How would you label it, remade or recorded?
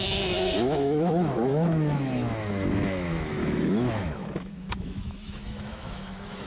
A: remade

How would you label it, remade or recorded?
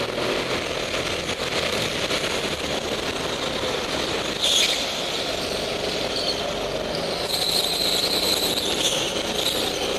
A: recorded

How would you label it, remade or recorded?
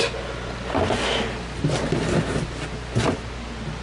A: recorded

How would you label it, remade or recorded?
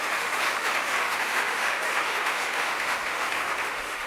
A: remade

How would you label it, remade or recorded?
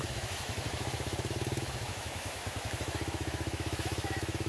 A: remade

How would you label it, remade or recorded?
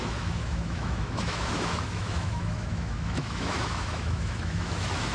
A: remade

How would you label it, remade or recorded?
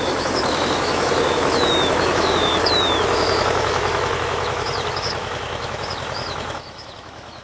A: remade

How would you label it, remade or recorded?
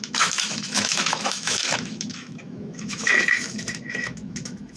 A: remade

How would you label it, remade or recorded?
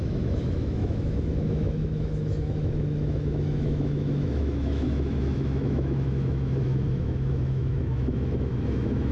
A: remade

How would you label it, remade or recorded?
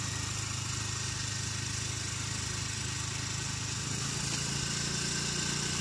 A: recorded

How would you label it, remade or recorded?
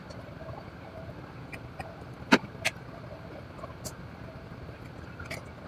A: recorded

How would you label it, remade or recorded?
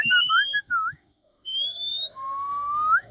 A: remade